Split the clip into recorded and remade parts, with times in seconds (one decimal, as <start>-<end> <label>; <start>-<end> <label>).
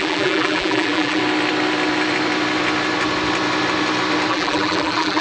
0.0-1.2 remade; 1.2-4.3 recorded; 4.3-5.2 remade